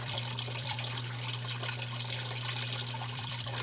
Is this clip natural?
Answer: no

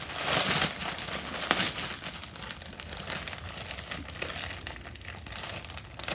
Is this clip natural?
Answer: yes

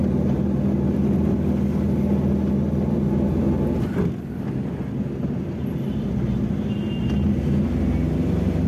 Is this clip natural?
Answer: yes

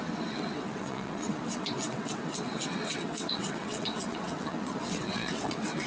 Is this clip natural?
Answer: no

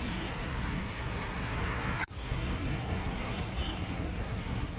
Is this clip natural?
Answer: no